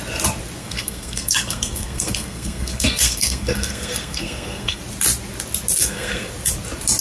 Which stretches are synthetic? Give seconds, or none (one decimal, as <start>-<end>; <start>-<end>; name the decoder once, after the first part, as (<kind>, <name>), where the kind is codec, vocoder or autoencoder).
0.6-4.8 (codec, SNAC); 5.8-6.3